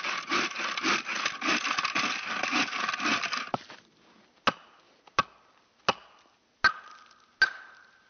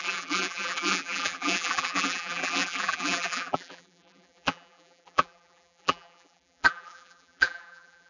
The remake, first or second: second